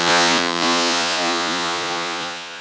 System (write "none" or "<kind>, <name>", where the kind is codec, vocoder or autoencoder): vocoder, Vocos